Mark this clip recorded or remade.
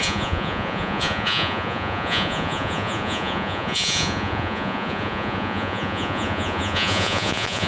remade